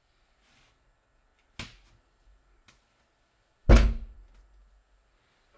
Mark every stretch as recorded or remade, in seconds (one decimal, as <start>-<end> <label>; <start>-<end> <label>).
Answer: 0.0-5.6 recorded